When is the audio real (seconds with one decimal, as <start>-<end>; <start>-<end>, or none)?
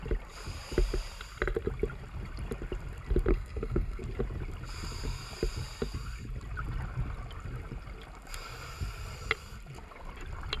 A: 0.0-3.3; 4.0-10.6